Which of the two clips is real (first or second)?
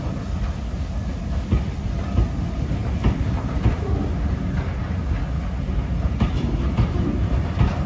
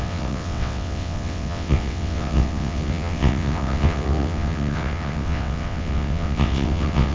first